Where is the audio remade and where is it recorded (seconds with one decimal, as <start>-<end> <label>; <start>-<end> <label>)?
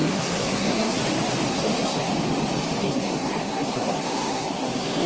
0.0-1.0 remade; 1.0-1.5 recorded; 1.5-2.1 remade; 2.1-2.8 recorded; 2.8-5.1 remade